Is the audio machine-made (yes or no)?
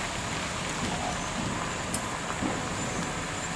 no